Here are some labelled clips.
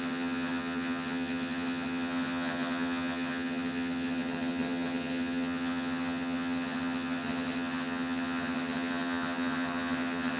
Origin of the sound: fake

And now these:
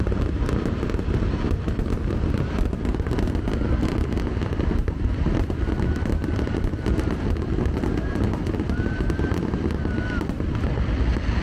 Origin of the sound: real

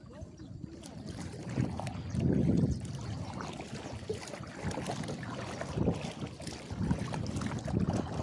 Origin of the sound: real